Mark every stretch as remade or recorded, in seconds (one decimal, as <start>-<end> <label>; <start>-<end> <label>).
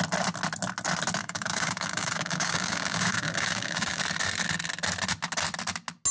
0.0-1.2 recorded; 1.2-4.0 remade; 4.0-6.1 recorded